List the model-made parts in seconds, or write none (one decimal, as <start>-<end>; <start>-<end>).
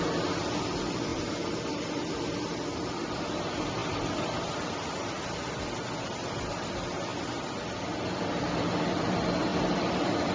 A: 1.1-1.6; 3.8-6.5; 7.1-7.7